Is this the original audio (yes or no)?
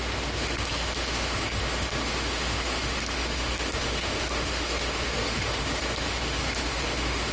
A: no